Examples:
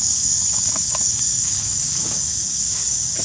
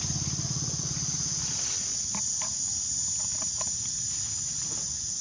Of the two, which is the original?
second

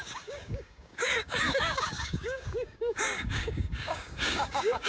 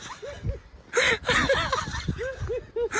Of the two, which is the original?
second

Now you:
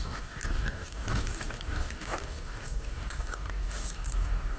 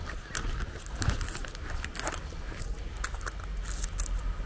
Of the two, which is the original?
second